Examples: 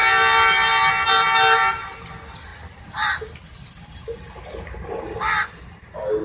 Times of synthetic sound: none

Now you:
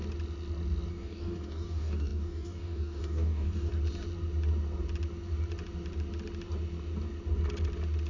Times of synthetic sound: 0.9-3.7 (codec, DAC)

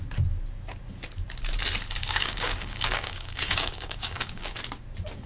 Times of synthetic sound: 2.0-4.6 (codec, DAC)

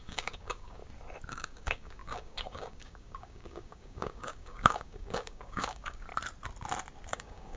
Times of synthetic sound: 0.0-0.8 (codec, DAC); 1.3-6.1; 7.1-7.6

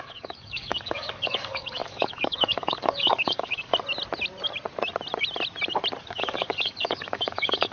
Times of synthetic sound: 0.0-3.7 (codec, DAC); 6.0-7.7

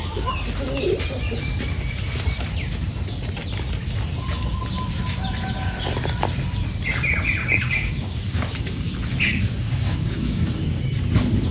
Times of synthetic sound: 7.4-8.9 (codec, DAC); 9.3-10.8

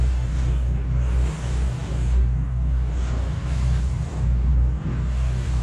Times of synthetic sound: 0.0-5.6 (codec, DAC)